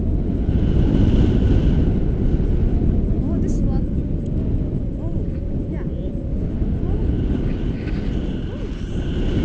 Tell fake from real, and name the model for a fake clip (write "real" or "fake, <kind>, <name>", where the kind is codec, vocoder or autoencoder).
real